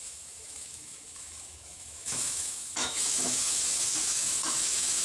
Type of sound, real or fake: fake